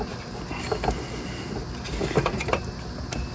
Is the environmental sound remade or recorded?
recorded